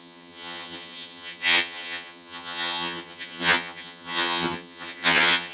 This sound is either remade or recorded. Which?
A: remade